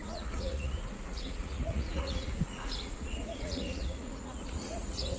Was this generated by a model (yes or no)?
yes